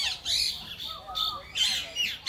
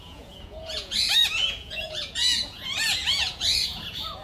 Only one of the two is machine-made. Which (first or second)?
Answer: second